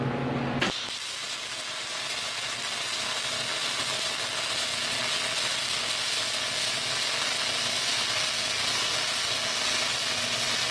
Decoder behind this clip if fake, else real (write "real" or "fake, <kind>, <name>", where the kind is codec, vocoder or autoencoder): real